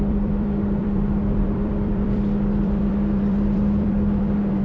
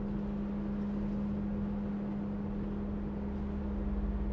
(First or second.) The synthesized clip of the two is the first